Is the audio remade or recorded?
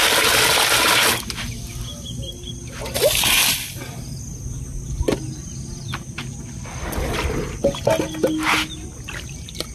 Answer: recorded